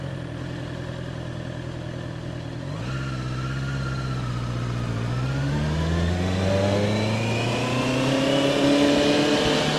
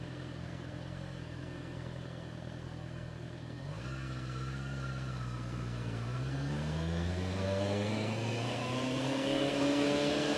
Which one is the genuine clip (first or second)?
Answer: first